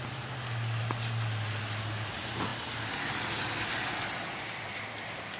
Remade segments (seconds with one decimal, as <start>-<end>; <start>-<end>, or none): none